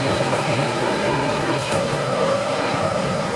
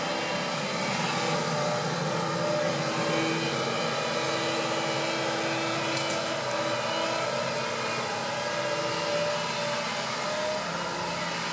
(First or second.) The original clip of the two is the second